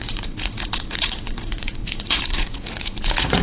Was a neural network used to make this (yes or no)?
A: yes